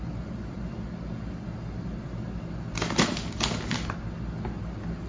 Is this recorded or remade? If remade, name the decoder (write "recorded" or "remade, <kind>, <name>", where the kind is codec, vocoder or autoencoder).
recorded